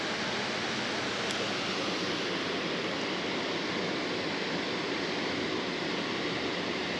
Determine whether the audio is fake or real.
real